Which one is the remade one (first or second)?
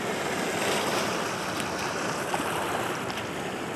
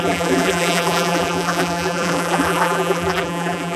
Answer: second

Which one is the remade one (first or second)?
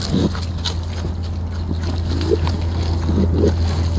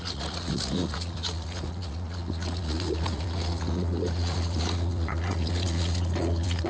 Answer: second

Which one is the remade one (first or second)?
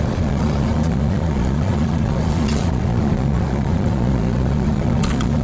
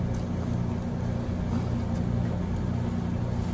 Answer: first